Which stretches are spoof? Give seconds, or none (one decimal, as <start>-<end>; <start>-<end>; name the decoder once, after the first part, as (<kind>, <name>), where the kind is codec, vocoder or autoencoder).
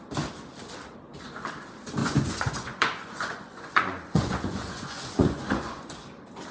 2.0-5.9 (vocoder, Vocos)